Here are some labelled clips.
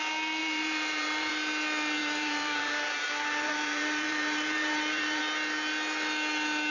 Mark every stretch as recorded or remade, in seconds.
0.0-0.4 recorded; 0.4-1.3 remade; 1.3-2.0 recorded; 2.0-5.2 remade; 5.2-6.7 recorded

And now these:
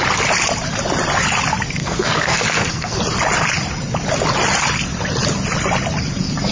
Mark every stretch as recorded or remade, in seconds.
0.0-1.8 recorded; 1.8-3.0 remade; 3.0-6.5 recorded

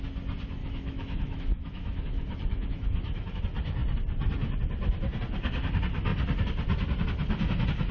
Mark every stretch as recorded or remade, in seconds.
0.0-0.6 recorded; 0.6-3.4 remade; 3.4-7.9 recorded

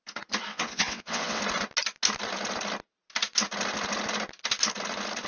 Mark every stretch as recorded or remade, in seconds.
0.0-0.5 recorded; 0.5-1.4 remade; 1.4-5.3 recorded

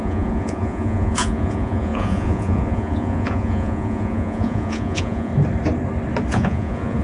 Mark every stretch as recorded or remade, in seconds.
0.0-5.3 remade; 5.3-6.3 recorded; 6.3-7.0 remade